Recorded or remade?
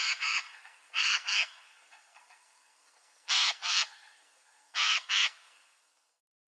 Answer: remade